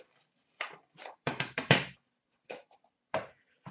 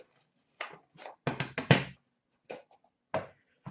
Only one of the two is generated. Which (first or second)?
first